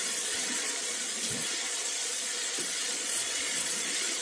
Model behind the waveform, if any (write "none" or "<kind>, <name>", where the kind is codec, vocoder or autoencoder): vocoder, Vocos